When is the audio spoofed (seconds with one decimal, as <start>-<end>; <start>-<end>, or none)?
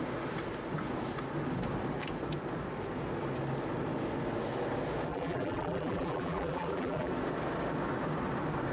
5.1-7.1